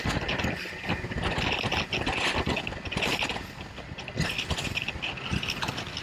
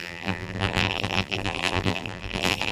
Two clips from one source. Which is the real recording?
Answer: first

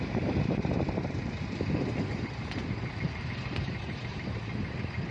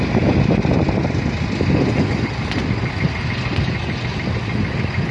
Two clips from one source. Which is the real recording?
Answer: second